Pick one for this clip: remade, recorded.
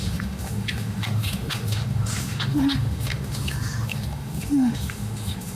remade